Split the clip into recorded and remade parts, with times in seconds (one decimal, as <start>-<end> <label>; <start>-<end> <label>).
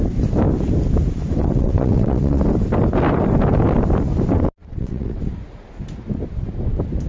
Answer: 0.0-1.4 recorded; 1.4-2.4 remade; 2.4-4.7 recorded; 4.7-5.2 remade; 5.2-7.1 recorded